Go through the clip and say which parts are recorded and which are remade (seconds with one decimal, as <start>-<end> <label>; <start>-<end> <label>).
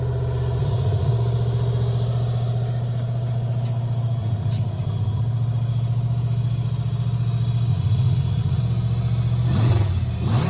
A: 0.0-0.6 recorded; 0.6-1.1 remade; 1.1-4.2 recorded; 4.2-5.2 remade; 5.2-7.7 recorded; 7.7-8.6 remade; 8.6-10.5 recorded